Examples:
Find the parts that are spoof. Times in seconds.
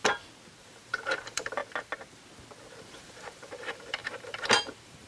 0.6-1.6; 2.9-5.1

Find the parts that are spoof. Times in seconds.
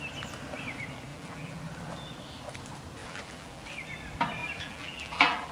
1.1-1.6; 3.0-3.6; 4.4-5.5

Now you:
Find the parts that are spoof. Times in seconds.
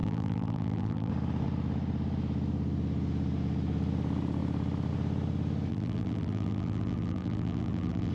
0.0-1.1; 5.7-8.1